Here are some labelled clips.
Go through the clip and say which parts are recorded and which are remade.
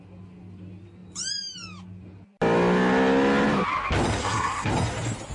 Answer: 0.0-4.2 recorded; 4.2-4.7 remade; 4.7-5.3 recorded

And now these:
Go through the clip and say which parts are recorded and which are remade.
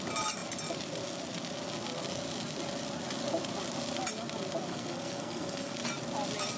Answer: 0.0-4.7 recorded; 4.7-5.7 remade; 5.7-6.6 recorded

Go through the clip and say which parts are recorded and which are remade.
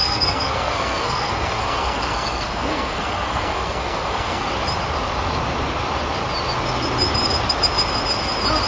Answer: 0.0-4.5 remade; 4.5-8.7 recorded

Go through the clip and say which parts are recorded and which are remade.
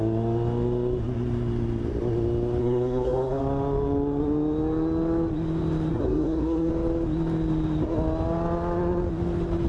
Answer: 0.0-2.6 recorded; 2.6-3.4 remade; 3.4-5.9 recorded; 5.9-6.7 remade; 6.7-9.7 recorded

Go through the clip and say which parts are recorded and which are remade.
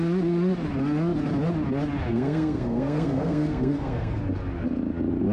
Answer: 0.0-2.1 recorded; 2.1-4.2 remade; 4.2-5.3 recorded